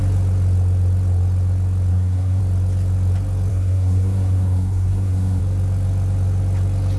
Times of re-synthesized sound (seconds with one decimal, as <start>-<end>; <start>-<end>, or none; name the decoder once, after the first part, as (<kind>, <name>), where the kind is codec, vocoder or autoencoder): 1.9-2.4 (codec, SNAC); 3.5-5.4